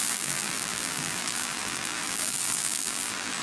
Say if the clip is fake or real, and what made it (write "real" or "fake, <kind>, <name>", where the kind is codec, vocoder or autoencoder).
fake, vocoder, BigVGAN v2